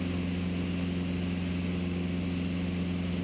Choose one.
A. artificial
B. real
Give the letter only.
B